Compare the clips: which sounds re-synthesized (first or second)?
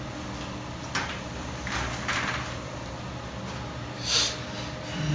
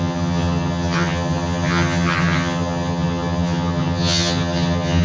second